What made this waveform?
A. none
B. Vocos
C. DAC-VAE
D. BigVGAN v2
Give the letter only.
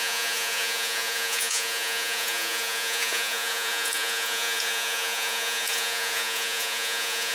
B